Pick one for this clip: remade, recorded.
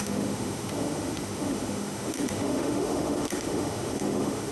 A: remade